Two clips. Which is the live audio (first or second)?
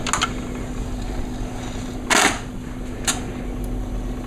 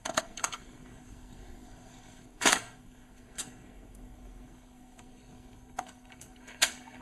first